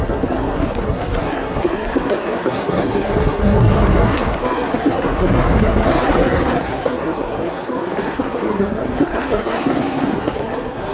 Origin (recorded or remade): remade